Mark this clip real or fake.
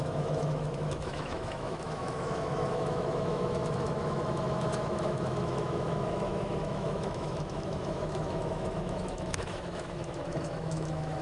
fake